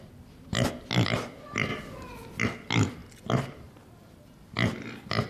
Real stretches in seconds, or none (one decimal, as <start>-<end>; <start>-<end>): 0.0-5.3